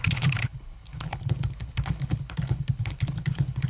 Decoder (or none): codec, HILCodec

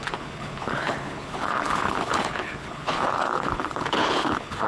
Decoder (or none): codec, HILCodec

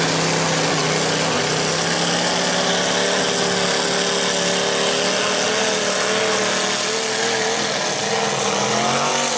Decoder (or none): none